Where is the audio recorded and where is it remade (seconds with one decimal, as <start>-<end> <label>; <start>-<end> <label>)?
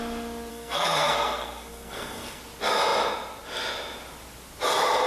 0.0-0.5 recorded; 0.5-2.4 remade; 2.4-5.1 recorded